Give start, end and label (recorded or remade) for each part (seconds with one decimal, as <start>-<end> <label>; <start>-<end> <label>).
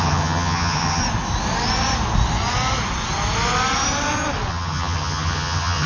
0.0-1.0 remade; 1.0-4.5 recorded; 4.5-5.9 remade